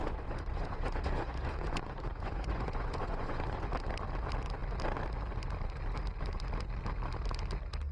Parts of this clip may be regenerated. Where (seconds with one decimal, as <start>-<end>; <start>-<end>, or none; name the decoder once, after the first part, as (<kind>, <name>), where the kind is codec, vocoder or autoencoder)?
0.0-3.7 (vocoder, Vocos)